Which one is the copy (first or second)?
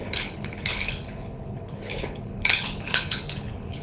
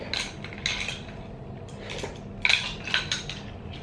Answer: first